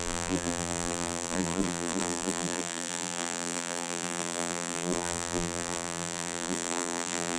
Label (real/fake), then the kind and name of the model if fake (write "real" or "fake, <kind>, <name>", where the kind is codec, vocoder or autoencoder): fake, vocoder, BigVGAN v2